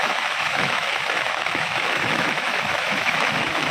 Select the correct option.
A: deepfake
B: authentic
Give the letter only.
A